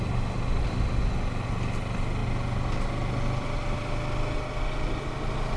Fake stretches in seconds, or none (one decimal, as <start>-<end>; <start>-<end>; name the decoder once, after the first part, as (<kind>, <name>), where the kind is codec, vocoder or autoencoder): none